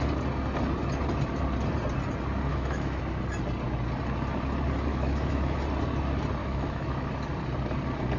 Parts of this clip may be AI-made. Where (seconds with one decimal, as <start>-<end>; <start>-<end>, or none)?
2.5-3.0; 4.9-5.6; 6.4-7.1

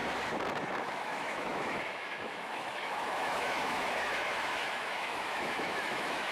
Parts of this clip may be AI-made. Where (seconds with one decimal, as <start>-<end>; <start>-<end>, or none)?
0.8-6.3

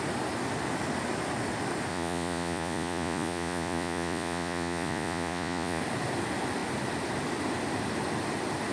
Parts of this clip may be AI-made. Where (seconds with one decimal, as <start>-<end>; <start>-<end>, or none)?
1.9-5.8

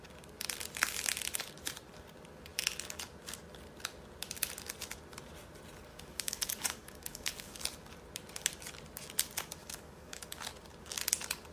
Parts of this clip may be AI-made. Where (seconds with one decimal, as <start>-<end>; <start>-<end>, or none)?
5.9-7.6; 9.6-10.2

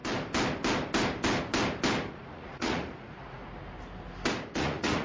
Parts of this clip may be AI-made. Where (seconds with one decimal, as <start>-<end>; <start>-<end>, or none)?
2.1-3.4; 4.6-5.0

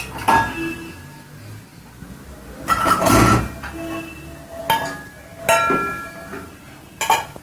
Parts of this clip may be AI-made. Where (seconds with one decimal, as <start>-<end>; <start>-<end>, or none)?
none

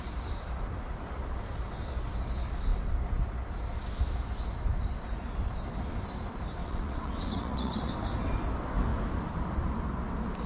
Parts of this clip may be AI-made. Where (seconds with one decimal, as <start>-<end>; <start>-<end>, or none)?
6.6-7.9